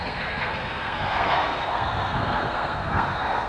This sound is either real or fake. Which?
fake